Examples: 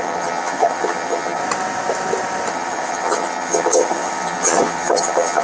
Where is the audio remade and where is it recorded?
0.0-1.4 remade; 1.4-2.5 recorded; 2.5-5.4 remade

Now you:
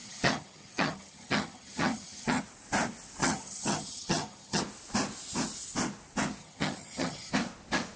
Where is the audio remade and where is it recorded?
0.0-2.4 remade; 2.4-3.2 recorded; 3.2-4.6 remade; 4.6-6.4 recorded; 6.4-7.3 remade; 7.3-8.0 recorded

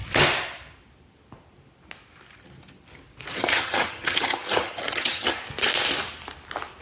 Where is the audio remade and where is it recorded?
0.0-3.3 recorded; 3.3-5.4 remade; 5.4-6.8 recorded

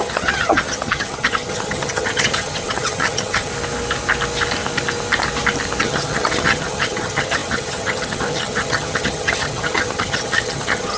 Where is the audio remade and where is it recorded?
0.0-3.5 remade; 3.5-5.8 recorded; 5.8-11.0 remade

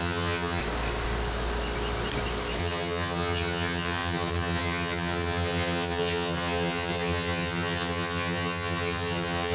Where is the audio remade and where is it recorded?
0.0-0.6 remade; 0.6-2.6 recorded; 2.6-9.5 remade